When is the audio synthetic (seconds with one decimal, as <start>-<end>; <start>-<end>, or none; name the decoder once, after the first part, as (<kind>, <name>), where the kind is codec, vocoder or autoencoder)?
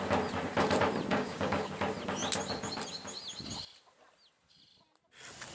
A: 1.1-1.7 (codec, DAC)